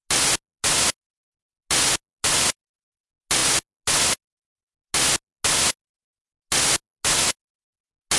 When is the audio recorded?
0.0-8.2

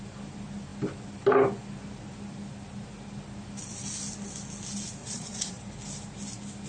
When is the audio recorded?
0.0-5.0; 5.6-6.7

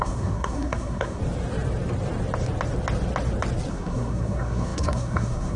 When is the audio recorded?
1.2-3.7